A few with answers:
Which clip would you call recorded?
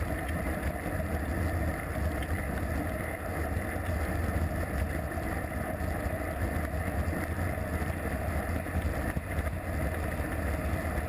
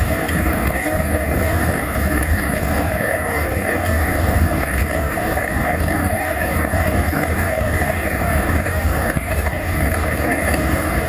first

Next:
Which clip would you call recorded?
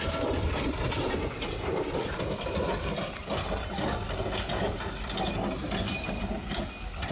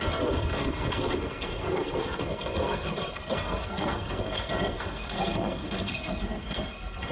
first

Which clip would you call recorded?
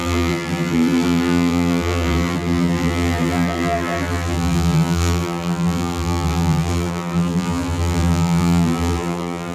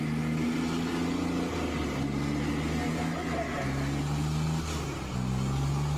second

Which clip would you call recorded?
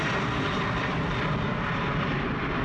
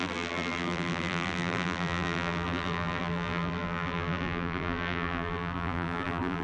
first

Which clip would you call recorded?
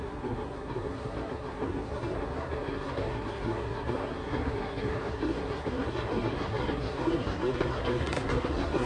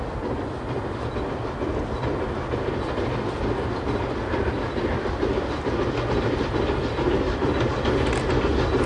second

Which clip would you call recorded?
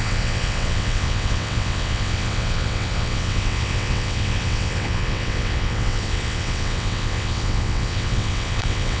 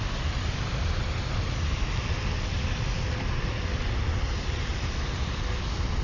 second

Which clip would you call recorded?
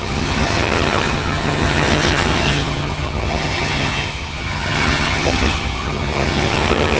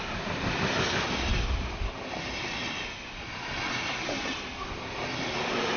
second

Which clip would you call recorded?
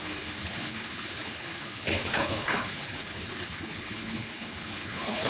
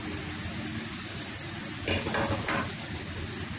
second